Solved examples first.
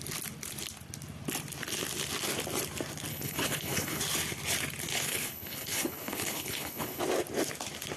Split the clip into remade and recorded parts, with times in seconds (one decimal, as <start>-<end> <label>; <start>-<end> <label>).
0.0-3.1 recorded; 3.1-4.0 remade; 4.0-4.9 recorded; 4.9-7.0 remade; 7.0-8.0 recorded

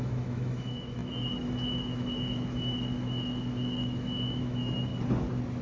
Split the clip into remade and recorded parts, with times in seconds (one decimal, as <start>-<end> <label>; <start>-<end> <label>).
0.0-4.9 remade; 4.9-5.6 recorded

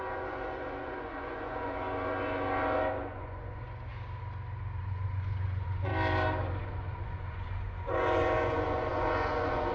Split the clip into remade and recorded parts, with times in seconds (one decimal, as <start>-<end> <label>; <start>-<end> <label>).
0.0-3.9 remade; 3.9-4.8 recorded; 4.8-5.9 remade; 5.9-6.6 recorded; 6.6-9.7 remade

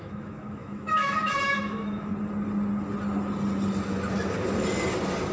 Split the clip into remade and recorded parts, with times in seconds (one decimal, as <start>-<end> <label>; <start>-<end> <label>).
0.0-2.1 remade; 2.1-5.3 recorded

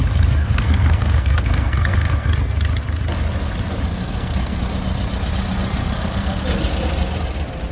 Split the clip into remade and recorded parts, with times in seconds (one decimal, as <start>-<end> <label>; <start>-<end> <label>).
0.0-0.4 recorded; 0.4-2.3 remade; 2.3-3.9 recorded; 3.9-4.6 remade; 4.6-5.8 recorded; 5.8-6.4 remade; 6.4-7.7 recorded

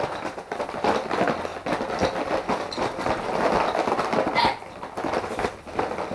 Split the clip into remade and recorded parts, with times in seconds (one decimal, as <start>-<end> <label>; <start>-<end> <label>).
0.0-6.1 recorded

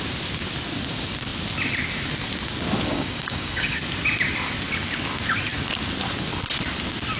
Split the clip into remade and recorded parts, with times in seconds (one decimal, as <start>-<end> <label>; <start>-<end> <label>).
0.0-2.9 recorded; 2.9-3.8 remade; 3.8-7.2 recorded

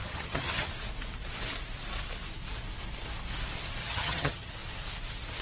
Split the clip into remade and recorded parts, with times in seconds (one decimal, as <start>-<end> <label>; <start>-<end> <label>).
0.0-0.7 remade; 0.7-3.8 recorded; 3.8-4.5 remade; 4.5-5.4 recorded